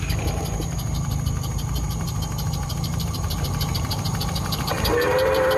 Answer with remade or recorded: remade